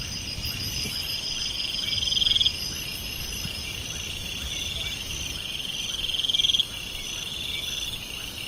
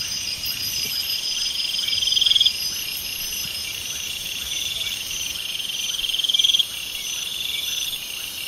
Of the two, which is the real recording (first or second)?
first